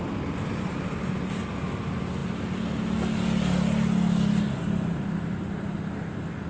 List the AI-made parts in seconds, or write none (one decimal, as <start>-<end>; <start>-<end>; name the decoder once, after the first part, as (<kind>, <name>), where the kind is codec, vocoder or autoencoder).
none